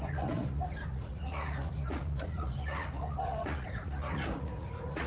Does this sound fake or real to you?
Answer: fake